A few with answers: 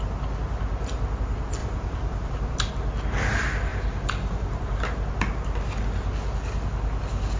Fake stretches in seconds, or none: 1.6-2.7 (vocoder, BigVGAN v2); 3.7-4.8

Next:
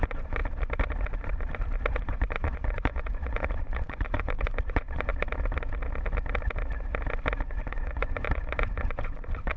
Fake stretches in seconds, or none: 0.0-0.4 (vocoder, Vocos); 2.0-5.1; 7.6-9.6

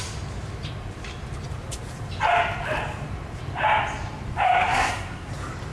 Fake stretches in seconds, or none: 4.6-5.3 (codec, SNAC)

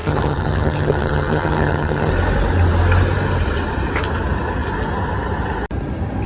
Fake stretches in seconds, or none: 0.0-2.1 (vocoder, HiFi-GAN)

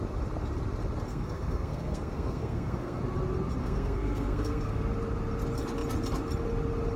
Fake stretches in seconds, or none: 1.1-3.0 (codec, SNAC); 3.6-4.8

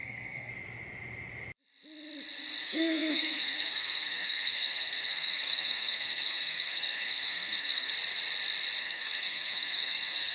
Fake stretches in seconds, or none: 0.0-0.5 (codec, SNAC); 2.6-7.9; 8.8-10.3

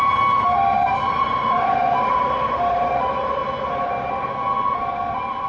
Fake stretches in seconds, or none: 0.0-3.4 (vocoder, BigVGAN v2); 5.1-5.5

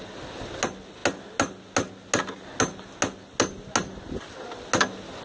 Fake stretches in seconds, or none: none